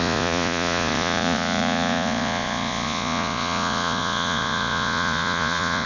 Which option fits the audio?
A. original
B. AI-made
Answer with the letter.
B